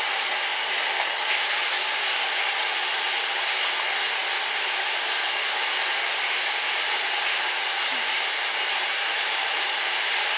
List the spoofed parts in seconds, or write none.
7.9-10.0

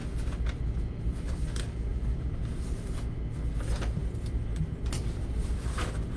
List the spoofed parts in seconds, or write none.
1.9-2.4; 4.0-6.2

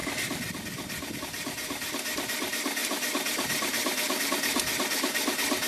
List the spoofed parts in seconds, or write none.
none

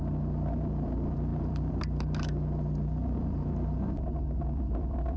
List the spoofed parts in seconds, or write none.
0.0-5.2